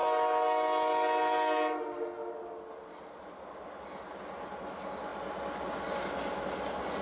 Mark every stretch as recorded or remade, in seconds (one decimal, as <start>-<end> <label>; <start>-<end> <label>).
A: 0.0-7.0 recorded